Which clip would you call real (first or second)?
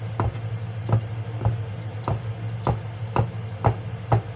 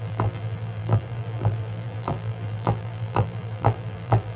first